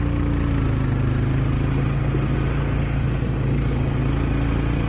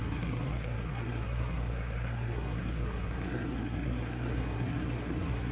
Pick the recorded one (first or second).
first